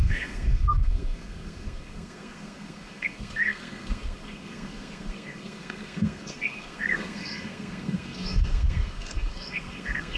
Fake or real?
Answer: fake